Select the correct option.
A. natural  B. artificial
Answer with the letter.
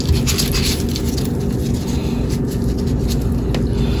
A